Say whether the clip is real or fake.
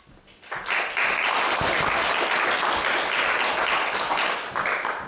real